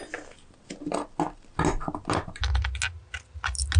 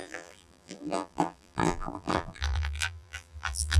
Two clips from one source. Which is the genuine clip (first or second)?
first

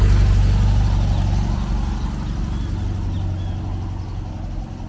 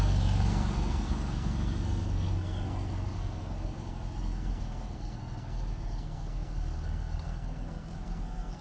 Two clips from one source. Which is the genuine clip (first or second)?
first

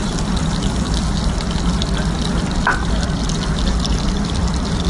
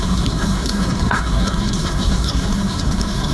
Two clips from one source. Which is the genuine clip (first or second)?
first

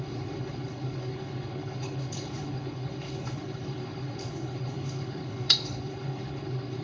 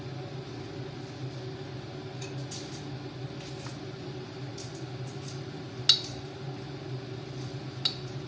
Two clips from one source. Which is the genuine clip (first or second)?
second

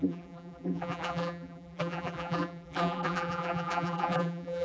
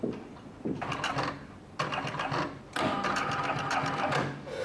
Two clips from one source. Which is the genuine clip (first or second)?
second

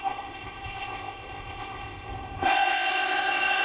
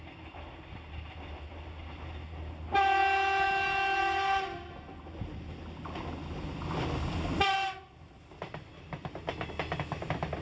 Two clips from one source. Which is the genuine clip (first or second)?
second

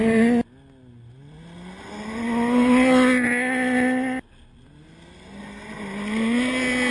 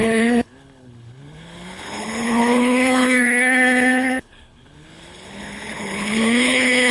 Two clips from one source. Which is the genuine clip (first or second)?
first